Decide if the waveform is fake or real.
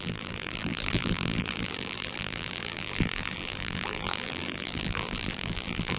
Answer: fake